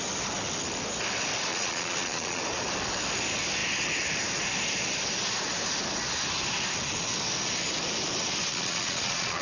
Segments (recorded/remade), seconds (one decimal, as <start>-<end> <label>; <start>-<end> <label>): 0.0-1.5 recorded; 1.5-2.4 remade; 2.4-8.5 recorded; 8.5-9.4 remade